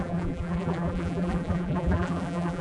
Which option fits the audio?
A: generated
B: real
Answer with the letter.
A